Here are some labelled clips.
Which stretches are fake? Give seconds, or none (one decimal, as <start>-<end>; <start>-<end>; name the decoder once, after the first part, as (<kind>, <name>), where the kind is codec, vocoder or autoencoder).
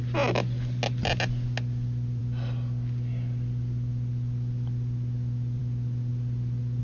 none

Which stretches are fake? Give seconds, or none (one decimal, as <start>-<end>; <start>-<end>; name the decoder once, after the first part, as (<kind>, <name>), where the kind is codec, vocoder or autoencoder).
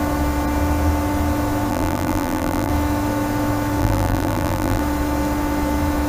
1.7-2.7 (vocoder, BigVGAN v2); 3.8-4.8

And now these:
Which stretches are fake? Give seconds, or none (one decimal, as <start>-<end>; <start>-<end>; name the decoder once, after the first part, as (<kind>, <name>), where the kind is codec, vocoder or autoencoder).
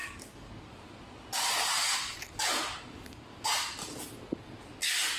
0.0-0.7 (codec, DAC)